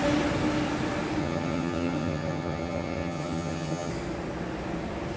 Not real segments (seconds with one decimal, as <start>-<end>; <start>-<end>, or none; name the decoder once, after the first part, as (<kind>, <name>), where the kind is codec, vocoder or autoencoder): 1.2-3.9 (vocoder, HiFi-GAN)